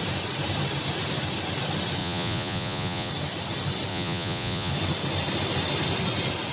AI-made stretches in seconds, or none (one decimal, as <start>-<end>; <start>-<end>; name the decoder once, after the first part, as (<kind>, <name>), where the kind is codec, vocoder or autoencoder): 2.0-3.1 (vocoder, Vocos); 3.9-4.7